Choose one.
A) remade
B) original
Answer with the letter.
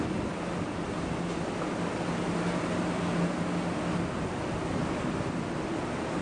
B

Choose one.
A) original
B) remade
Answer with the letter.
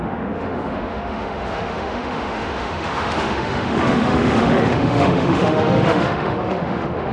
B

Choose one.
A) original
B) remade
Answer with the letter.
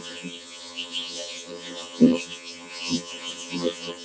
B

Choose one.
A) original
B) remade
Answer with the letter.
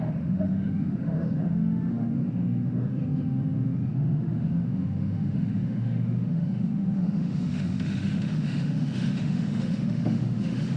B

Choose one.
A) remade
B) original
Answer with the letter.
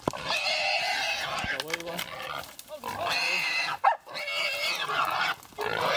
B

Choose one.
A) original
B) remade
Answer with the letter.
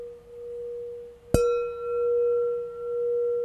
A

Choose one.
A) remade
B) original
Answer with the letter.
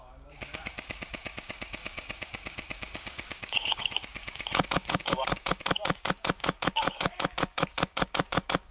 A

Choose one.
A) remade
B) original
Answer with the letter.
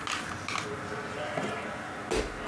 B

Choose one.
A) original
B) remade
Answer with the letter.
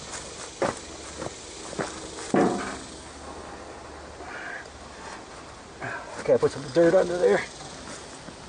A